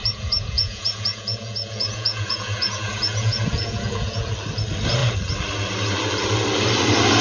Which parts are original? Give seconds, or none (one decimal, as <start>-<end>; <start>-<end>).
4.3-7.2